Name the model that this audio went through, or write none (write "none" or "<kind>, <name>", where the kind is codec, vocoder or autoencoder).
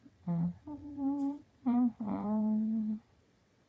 vocoder, WaveNeXt